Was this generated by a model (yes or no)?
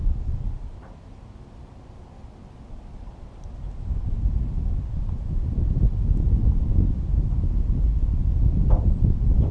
no